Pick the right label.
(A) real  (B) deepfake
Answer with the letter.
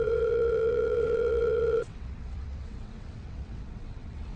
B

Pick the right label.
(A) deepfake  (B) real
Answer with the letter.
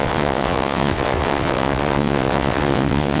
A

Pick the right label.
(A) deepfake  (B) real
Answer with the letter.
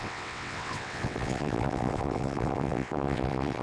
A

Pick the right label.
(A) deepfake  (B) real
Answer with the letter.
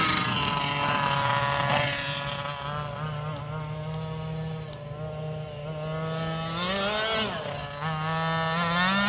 B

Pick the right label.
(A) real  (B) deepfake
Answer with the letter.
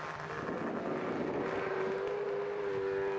A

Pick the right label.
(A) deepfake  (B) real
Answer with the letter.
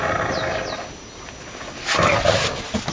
B